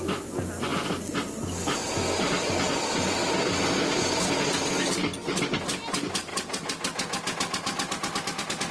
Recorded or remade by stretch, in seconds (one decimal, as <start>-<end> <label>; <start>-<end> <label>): 0.0-8.7 recorded